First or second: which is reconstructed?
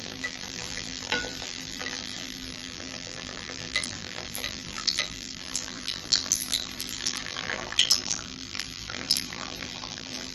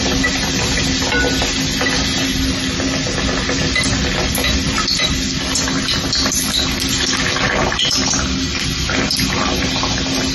first